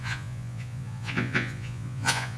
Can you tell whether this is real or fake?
fake